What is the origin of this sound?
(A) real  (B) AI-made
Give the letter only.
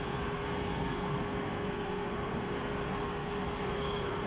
B